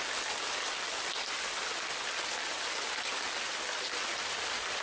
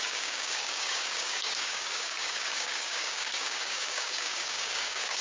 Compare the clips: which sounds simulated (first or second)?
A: second